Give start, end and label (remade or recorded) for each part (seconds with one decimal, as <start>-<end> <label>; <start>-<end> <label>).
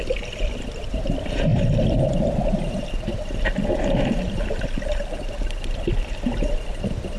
0.0-7.2 recorded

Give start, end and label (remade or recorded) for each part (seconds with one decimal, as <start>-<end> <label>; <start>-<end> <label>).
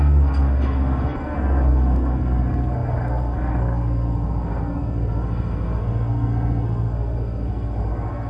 0.0-8.3 remade